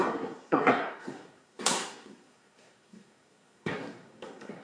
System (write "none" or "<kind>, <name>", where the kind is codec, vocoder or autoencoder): codec, SNAC